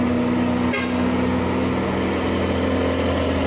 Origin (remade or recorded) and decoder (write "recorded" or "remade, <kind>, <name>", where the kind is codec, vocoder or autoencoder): recorded